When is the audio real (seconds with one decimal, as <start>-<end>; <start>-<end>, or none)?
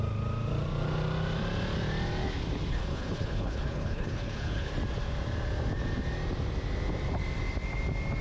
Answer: 0.0-2.7; 4.7-8.2